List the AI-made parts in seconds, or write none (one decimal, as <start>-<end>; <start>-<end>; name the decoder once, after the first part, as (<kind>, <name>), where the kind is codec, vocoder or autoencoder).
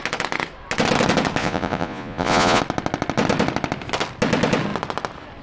1.4-2.6 (vocoder, Vocos)